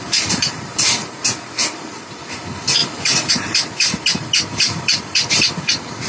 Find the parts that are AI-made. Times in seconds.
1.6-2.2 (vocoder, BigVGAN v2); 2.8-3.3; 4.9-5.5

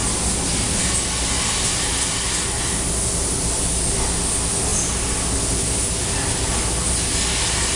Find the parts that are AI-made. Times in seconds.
none

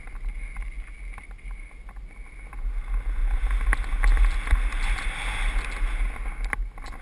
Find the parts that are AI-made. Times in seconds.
none

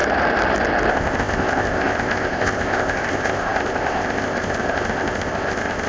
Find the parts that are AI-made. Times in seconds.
0.9-5.9 (codec, ZipCodec)